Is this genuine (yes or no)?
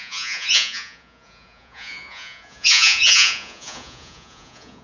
no